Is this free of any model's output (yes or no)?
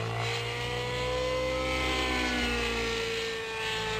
yes